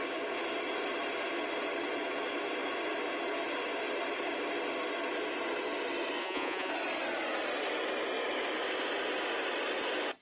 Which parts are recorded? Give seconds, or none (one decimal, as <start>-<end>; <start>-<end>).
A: 0.0-6.2; 6.7-10.2

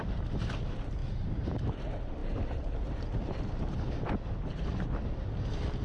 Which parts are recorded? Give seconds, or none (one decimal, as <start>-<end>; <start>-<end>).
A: 0.0-5.8

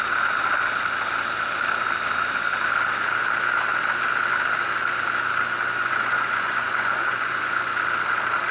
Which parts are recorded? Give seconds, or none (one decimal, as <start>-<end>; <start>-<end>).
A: 0.0-5.8; 7.8-8.5

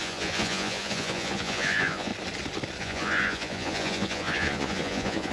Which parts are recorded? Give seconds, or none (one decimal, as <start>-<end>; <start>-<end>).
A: 2.1-2.8

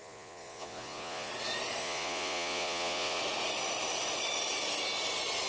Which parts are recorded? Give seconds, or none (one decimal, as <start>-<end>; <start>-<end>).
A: 1.3-1.8; 3.2-5.5